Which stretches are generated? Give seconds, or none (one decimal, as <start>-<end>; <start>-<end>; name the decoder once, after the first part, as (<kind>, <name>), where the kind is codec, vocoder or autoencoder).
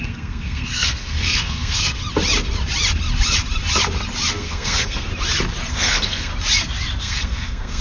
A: 0.0-2.0 (codec, SNAC); 4.3-5.1; 5.7-6.3; 7.0-7.8